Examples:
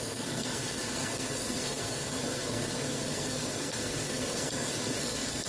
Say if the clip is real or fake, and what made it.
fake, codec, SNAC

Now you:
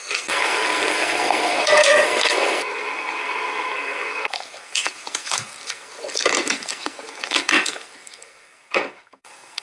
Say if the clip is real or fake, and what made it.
fake, codec, SNAC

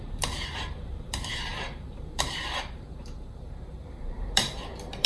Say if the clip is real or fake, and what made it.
fake, vocoder, BigVGAN v2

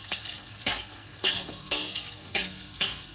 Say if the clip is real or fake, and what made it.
fake, codec, SNAC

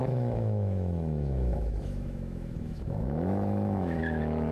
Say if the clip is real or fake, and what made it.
fake, autoencoder, DAC-VAE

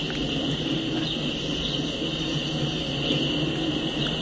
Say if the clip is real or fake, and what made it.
real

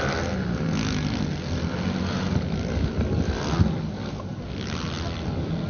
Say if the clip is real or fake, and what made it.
real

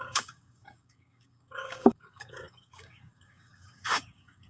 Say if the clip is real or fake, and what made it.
fake, codec, DAC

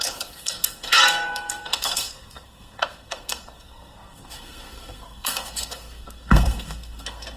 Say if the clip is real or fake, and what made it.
fake, codec, SNAC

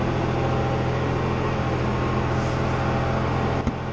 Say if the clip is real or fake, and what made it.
real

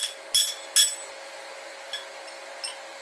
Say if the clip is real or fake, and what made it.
real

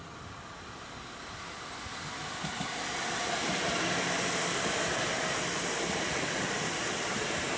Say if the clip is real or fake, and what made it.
real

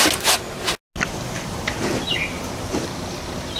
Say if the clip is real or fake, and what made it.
real